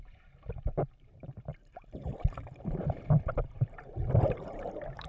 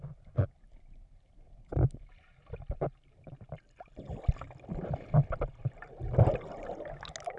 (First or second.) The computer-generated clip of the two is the first